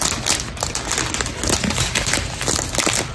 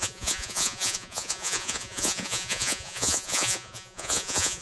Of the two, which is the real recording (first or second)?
first